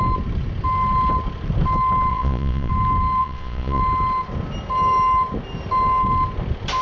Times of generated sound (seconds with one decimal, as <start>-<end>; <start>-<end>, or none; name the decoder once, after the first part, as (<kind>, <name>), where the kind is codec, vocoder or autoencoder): 2.1-2.7 (vocoder, Vocos); 3.2-3.8